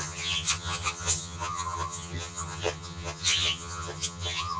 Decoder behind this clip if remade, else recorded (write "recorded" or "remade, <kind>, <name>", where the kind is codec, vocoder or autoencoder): remade, vocoder, HiFi-GAN